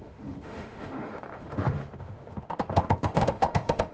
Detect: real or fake fake